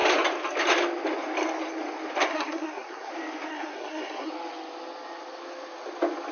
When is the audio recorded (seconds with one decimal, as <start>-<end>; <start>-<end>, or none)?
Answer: 0.0-2.3; 3.1-3.5; 4.3-6.3